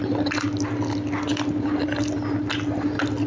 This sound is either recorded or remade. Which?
recorded